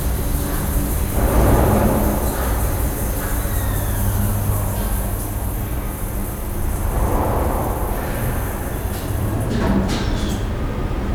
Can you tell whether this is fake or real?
real